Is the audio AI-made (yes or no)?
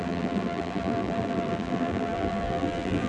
yes